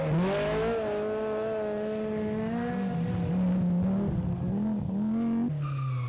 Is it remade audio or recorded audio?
recorded